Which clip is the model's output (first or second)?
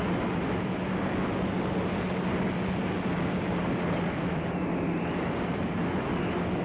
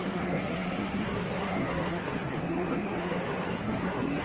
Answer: second